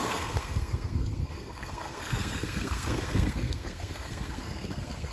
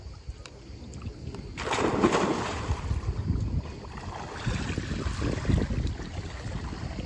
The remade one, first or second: first